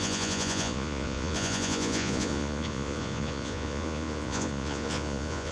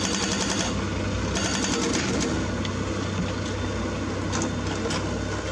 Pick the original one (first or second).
second